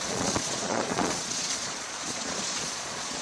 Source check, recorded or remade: remade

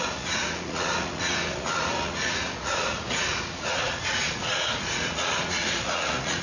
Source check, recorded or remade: remade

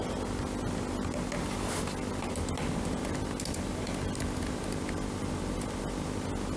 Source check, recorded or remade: recorded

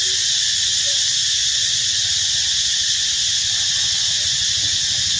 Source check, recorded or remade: remade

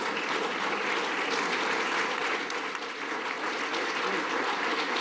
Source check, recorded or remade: recorded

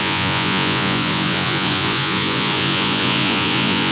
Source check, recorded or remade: remade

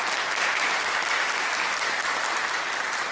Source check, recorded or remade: recorded